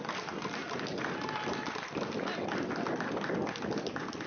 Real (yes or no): yes